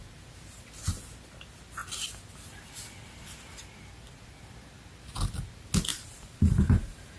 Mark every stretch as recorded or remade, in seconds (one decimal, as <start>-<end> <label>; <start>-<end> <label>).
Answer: 0.0-5.9 recorded; 5.9-7.2 remade